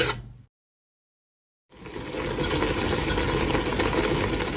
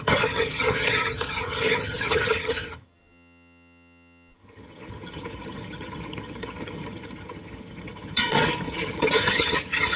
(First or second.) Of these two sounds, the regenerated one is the second